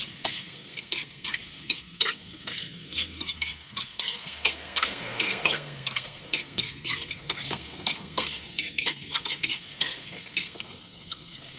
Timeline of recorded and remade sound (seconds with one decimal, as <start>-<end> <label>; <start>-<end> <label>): 0.0-11.6 remade